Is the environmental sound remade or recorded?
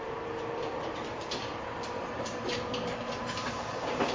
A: remade